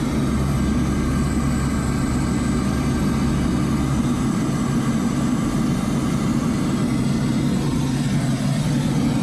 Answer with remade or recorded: recorded